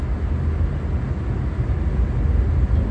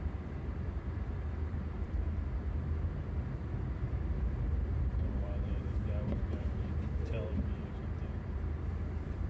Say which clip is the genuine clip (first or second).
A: first